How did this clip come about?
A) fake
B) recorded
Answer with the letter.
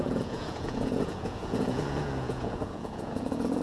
A